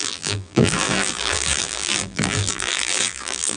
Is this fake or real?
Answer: fake